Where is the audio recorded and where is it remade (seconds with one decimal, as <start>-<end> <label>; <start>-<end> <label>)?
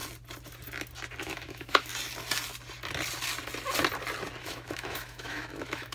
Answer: 0.0-1.2 recorded; 1.2-1.9 remade; 1.9-4.4 recorded; 4.4-5.9 remade